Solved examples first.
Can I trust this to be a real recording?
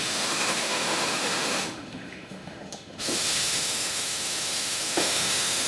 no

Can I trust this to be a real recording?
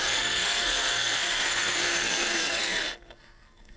no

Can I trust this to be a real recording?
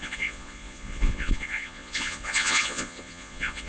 no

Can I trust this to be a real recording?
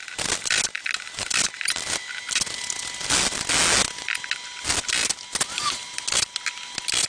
yes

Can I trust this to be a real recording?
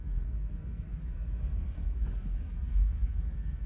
no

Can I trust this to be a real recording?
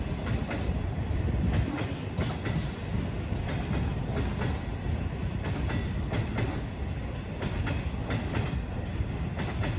yes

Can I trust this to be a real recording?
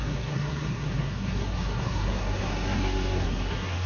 no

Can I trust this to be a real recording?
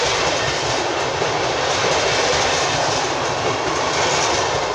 yes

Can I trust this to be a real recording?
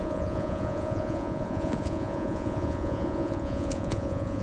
no